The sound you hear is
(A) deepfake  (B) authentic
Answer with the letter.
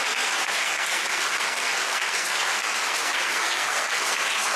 A